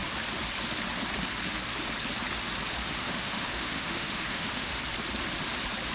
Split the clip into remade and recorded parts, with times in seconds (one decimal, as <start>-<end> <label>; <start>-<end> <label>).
0.0-3.0 recorded; 3.0-4.8 remade; 4.8-5.9 recorded